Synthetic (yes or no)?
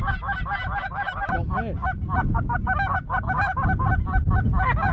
no